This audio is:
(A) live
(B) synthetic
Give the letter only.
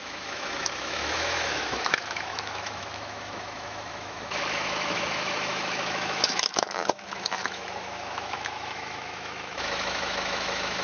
B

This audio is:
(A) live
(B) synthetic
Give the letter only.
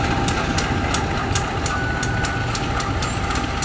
A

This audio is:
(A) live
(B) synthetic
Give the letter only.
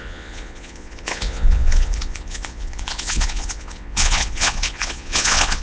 B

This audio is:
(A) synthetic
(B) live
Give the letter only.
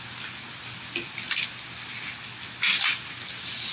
B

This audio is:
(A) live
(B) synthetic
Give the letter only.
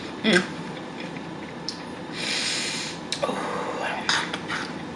A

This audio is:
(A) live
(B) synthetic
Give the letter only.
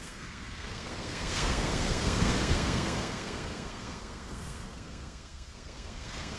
B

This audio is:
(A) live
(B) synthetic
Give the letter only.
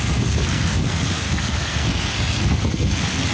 B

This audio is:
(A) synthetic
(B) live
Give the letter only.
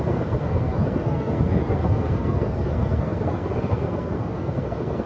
A